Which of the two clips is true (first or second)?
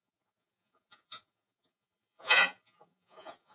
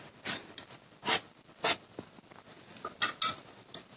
second